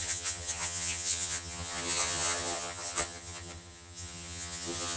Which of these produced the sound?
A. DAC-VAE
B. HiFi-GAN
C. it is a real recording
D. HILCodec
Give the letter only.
B